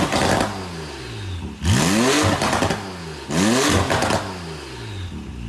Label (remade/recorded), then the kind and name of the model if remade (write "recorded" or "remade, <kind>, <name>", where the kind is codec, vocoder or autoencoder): recorded